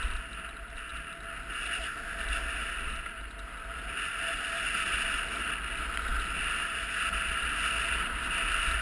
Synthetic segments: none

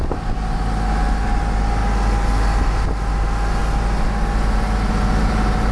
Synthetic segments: none

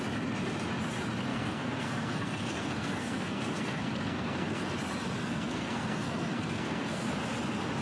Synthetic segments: 1.3-4.6 (codec, SNAC); 5.2-7.1

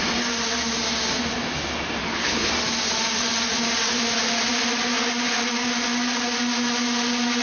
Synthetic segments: 2.0-2.5 (codec, HILCodec)

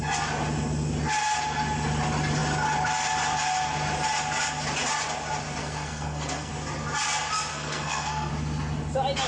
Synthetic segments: 5.6-6.5 (codec, SNAC); 7.5-8.3